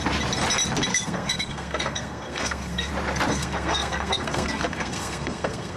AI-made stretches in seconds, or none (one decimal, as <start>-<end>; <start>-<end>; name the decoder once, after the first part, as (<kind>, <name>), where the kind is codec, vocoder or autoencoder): 0.9-2.9 (codec, SNAC); 3.3-5.8